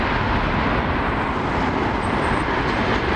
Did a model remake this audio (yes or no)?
no